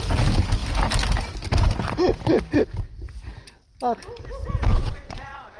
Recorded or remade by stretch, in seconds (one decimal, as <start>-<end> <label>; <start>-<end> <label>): 0.0-4.7 recorded; 4.7-5.6 remade